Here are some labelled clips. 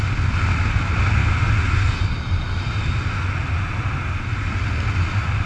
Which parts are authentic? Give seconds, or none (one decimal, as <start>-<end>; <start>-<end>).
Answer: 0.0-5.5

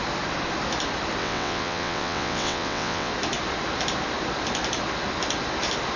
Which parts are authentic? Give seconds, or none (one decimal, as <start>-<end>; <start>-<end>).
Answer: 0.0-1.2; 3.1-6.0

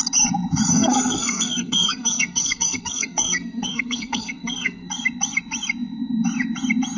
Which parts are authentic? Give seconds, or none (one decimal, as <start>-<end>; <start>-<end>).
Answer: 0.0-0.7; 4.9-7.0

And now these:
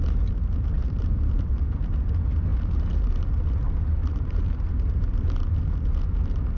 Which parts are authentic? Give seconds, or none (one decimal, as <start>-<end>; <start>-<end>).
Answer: 0.0-0.8; 1.5-2.5; 3.1-4.0; 5.6-6.6

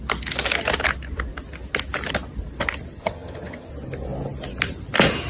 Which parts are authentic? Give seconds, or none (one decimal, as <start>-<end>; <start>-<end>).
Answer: 0.0-3.0; 3.7-5.3